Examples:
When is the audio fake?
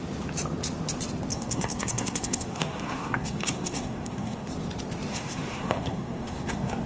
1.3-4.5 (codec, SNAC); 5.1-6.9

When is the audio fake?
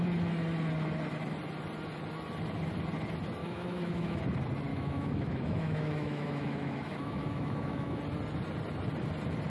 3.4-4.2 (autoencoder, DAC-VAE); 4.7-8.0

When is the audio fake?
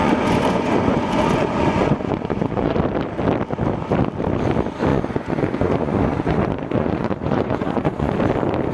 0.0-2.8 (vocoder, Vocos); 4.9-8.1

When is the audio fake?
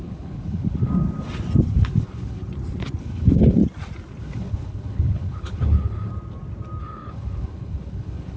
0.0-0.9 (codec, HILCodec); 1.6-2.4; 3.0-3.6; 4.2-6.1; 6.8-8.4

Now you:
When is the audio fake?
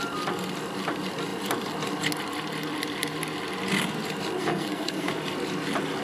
4.4-5.1 (codec, SNAC)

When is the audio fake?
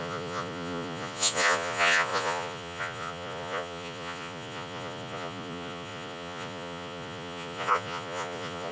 0.0-8.7 (vocoder, Vocos)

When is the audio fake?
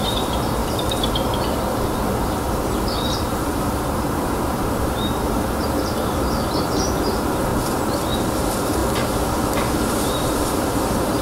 0.0-0.6 (vocoder, BigVGAN v2); 3.2-7.5; 8.2-8.8; 9.9-11.2